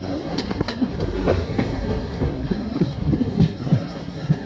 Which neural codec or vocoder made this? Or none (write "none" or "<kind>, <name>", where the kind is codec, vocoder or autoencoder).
codec, SNAC